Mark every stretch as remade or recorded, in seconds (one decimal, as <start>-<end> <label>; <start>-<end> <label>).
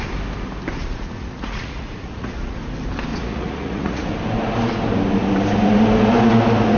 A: 0.0-0.8 recorded; 0.8-2.6 remade; 2.6-3.1 recorded; 3.1-4.1 remade; 4.1-6.8 recorded